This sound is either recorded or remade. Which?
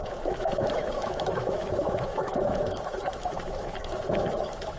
remade